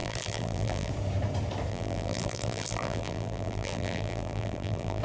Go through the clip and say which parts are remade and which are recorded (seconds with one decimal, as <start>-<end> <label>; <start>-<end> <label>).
0.0-0.9 remade; 0.9-1.7 recorded; 1.7-5.0 remade